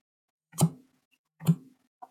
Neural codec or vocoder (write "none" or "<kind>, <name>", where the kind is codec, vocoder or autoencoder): vocoder, Vocos